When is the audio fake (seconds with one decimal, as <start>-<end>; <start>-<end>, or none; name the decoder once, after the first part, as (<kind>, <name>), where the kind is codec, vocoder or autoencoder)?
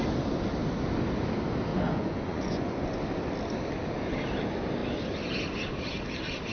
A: 1.7-3.0 (vocoder, Vocos)